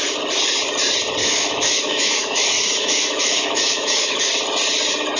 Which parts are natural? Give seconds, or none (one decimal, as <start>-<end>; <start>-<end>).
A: 0.0-1.2; 4.3-5.2